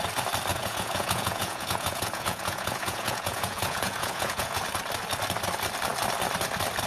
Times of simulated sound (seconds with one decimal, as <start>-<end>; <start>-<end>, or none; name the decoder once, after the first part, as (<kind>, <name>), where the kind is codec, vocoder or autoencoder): 0.5-4.6 (vocoder, Vocos)